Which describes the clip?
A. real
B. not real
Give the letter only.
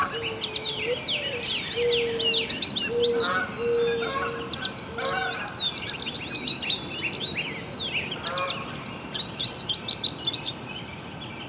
A